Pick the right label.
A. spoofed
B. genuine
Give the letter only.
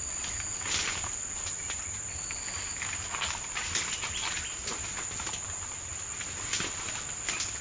B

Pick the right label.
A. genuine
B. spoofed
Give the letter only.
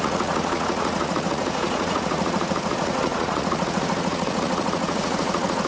B